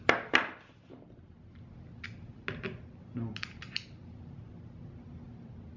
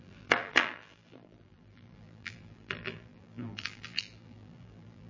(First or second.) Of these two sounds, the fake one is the second